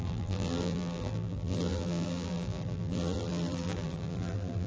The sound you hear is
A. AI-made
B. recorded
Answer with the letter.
A